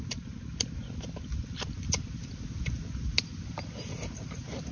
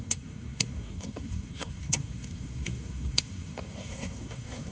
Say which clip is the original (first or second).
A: first